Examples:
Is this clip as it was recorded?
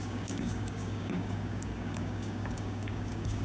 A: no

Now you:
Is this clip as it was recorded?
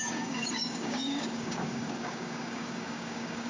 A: no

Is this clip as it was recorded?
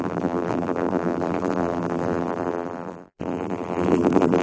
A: no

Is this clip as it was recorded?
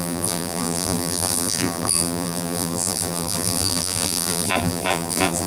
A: no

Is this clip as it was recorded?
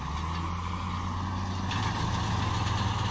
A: yes